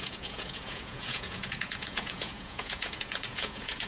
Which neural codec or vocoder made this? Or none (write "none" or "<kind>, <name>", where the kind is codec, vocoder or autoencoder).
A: vocoder, Vocos